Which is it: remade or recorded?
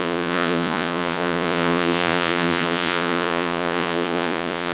remade